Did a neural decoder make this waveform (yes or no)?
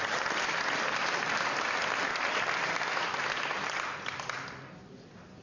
no